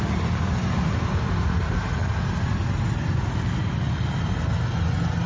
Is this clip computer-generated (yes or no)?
no